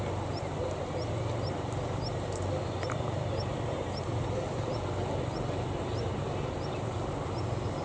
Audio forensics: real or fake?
real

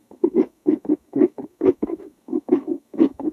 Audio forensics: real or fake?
fake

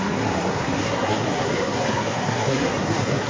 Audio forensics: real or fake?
fake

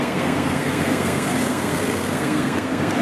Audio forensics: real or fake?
fake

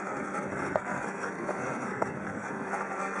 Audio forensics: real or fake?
fake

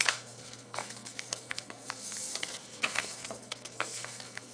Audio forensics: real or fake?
fake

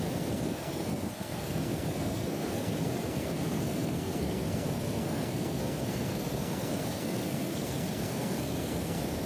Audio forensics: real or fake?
fake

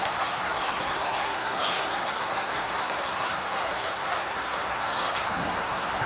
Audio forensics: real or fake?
fake